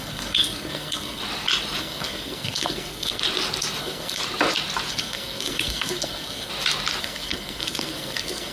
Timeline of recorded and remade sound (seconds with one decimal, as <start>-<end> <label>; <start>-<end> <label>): 0.0-1.2 remade; 1.2-1.8 recorded; 1.8-3.2 remade; 3.2-3.8 recorded; 3.8-4.2 remade; 4.2-4.9 recorded; 4.9-6.5 remade; 6.5-7.0 recorded; 7.0-8.5 remade

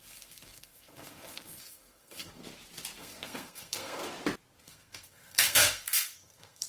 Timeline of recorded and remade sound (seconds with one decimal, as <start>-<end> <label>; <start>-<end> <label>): 0.0-2.4 remade; 2.4-3.0 recorded; 3.0-4.0 remade; 4.0-4.6 recorded; 4.6-6.7 remade

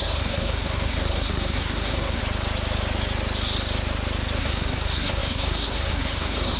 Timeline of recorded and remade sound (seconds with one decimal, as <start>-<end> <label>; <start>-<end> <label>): 0.0-2.2 remade; 2.2-4.4 recorded; 4.4-6.6 remade

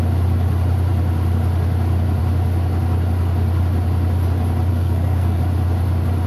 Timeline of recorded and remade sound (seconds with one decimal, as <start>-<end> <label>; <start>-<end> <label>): 0.0-4.7 recorded; 4.7-5.4 remade; 5.4-6.3 recorded

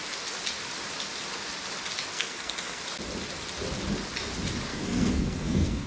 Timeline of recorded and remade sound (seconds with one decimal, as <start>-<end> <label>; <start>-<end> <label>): 0.0-2.1 recorded; 2.1-2.8 remade; 2.8-4.7 recorded; 4.7-5.9 remade

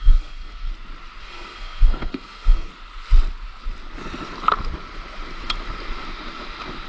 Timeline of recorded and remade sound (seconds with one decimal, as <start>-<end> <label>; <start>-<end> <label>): 0.0-0.7 remade; 0.7-1.2 recorded; 1.2-2.7 remade; 2.7-6.9 recorded

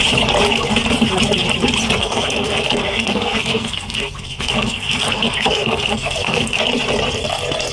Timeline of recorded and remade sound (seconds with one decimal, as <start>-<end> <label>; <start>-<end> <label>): 0.0-2.0 recorded; 2.0-6.6 remade; 6.6-7.7 recorded

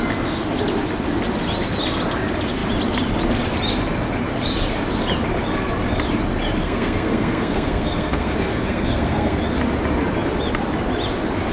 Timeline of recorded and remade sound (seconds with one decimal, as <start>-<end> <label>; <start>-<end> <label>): 0.0-6.6 recorded; 6.6-9.4 remade; 9.4-11.5 recorded